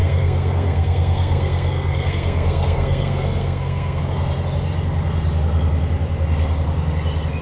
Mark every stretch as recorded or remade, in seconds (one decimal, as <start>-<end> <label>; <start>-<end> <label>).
0.0-4.0 remade; 4.0-7.4 recorded